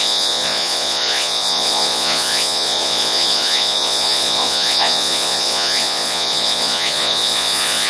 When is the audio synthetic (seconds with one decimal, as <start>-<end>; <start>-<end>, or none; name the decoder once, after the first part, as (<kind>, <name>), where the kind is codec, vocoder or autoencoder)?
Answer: 0.0-7.9 (vocoder, Vocos)